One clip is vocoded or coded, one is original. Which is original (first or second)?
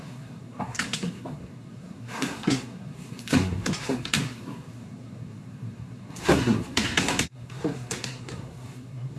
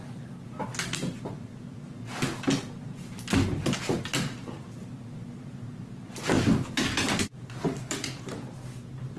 second